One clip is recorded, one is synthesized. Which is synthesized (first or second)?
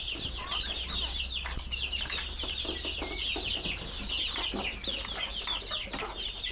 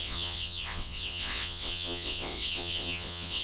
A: second